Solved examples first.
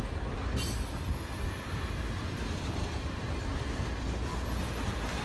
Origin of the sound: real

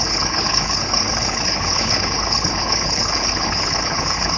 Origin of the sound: fake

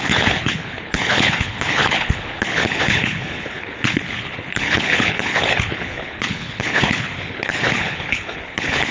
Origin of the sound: fake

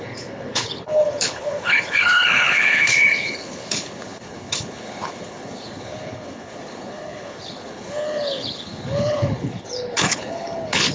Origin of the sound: fake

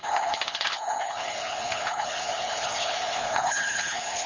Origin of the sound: fake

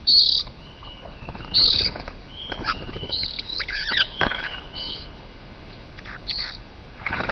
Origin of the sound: fake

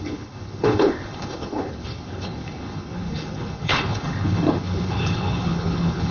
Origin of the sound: fake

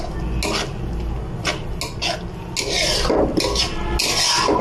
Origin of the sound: real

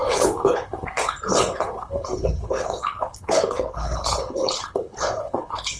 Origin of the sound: fake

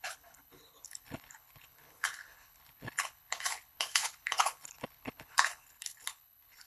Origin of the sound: fake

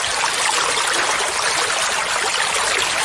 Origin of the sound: real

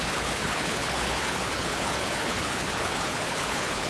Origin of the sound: fake